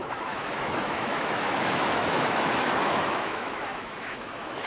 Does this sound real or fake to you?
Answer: fake